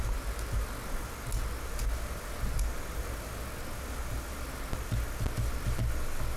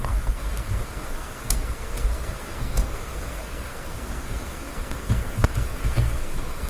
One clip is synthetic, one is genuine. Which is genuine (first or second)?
first